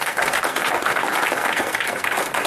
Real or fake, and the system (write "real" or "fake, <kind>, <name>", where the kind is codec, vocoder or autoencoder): fake, codec, SNAC